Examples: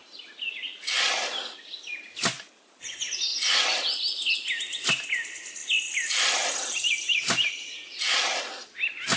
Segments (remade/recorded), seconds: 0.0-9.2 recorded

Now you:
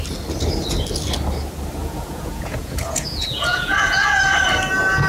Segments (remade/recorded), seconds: 0.0-1.8 recorded; 1.8-4.3 remade; 4.3-5.1 recorded